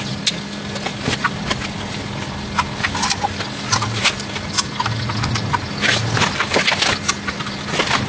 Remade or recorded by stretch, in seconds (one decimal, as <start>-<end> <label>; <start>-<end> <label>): 0.0-8.1 recorded